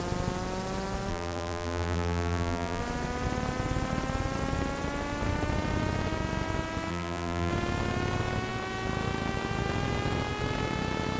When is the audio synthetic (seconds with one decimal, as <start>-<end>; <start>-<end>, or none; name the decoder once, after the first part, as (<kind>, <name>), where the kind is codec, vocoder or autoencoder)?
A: 1.1-2.8 (vocoder, BigVGAN v2); 6.9-7.5